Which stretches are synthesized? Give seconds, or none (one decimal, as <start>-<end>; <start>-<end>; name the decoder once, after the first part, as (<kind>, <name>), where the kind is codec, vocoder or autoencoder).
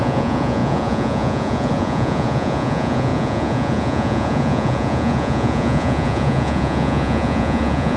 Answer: 0.0-8.0 (vocoder, Vocos)